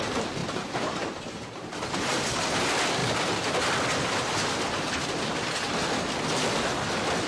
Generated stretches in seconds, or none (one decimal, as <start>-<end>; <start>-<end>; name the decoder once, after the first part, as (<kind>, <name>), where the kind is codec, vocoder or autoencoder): 0.4-1.7 (vocoder, BigVGAN v2)